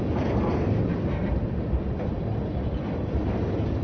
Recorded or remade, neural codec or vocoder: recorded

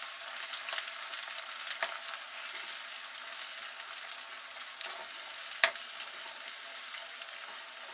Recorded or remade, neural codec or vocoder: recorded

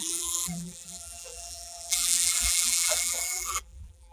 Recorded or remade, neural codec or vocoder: remade, vocoder, BigVGAN v2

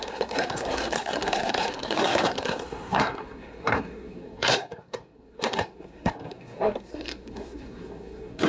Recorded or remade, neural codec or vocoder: remade, codec, SNAC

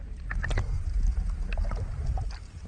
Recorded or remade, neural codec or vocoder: recorded